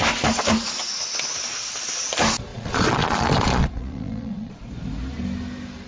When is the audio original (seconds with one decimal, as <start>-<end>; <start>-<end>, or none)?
0.0-2.5; 4.7-5.9